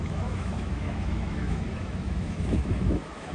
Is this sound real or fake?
fake